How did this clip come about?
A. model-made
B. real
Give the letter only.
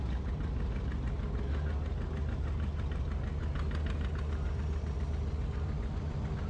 B